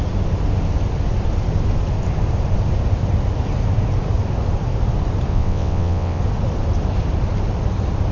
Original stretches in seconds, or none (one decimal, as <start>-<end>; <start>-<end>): 0.0-5.3; 6.2-8.1